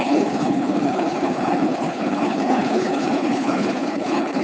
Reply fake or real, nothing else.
fake